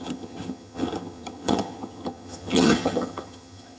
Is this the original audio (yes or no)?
no